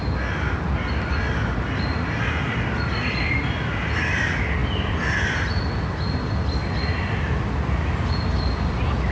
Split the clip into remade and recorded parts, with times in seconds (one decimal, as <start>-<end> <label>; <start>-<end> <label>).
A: 0.0-9.1 recorded